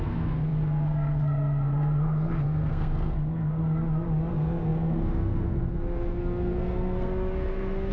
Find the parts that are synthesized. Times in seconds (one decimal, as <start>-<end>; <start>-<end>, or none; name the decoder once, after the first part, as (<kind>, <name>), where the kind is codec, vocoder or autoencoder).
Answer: 0.0-3.6 (codec, SNAC); 4.3-7.9